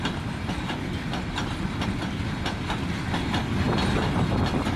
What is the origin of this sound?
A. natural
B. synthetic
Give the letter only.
A